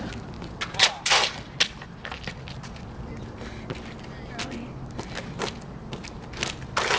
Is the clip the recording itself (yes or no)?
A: yes